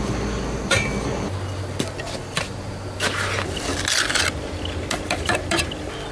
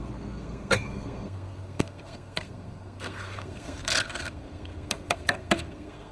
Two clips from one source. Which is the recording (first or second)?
first